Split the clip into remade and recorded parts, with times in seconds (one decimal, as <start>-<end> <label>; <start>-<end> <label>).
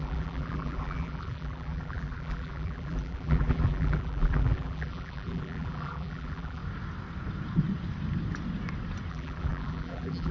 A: 0.0-6.6 remade; 6.6-9.1 recorded; 9.1-10.3 remade